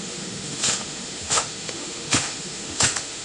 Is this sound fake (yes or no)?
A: yes